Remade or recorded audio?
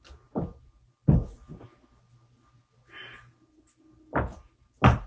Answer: recorded